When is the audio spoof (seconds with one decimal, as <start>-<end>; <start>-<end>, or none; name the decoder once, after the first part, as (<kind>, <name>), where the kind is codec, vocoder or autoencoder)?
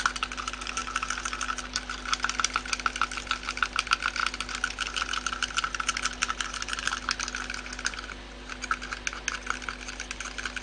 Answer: none